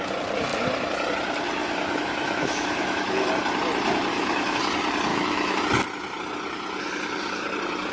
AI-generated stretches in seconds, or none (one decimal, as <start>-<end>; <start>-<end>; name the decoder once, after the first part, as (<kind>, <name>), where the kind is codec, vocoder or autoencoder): 1.6-3.3 (autoencoder, DAC-VAE); 4.1-4.6; 5.1-5.6